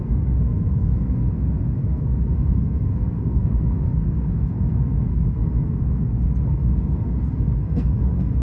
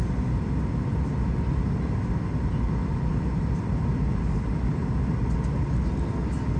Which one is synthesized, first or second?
first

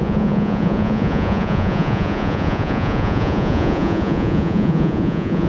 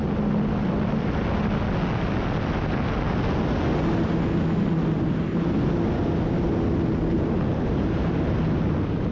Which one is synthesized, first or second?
first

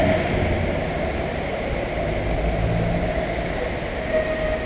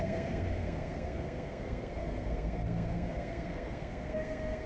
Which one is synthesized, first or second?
second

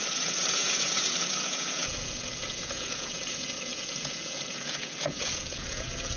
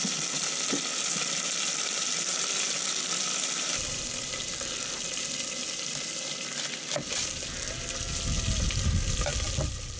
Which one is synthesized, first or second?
first